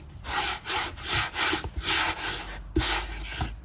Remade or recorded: recorded